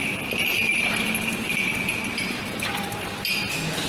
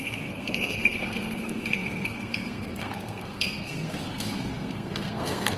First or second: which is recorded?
first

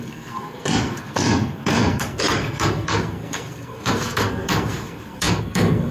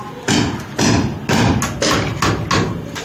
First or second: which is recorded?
second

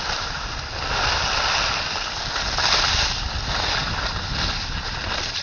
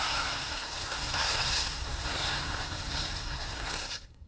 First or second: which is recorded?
first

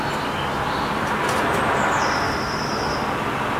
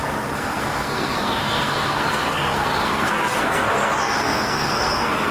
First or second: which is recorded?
first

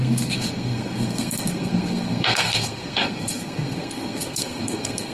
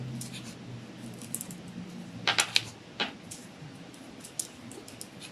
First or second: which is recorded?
second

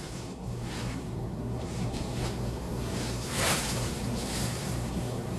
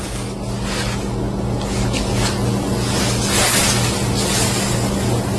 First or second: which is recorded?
second